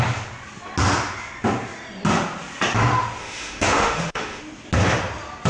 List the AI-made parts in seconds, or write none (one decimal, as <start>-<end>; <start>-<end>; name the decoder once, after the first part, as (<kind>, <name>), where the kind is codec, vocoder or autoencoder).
3.2-4.4 (autoencoder, DAC-VAE)